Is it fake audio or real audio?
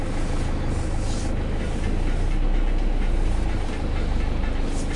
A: real